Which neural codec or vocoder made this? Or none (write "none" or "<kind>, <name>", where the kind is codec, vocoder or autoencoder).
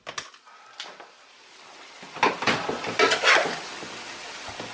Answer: none